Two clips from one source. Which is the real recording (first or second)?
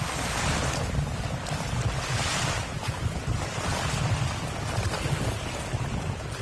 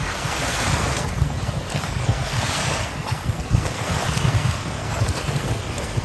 first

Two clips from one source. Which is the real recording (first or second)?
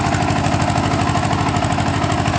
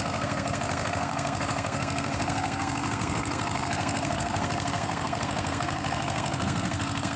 first